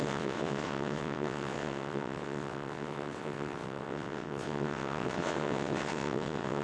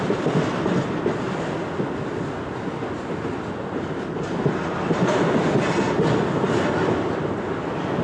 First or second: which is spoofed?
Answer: first